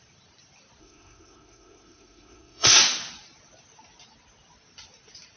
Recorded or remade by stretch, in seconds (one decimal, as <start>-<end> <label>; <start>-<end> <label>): 0.0-0.8 recorded; 0.8-2.8 remade; 2.8-5.4 recorded